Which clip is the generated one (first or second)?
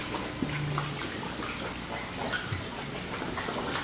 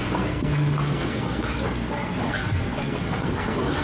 second